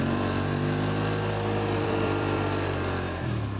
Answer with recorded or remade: remade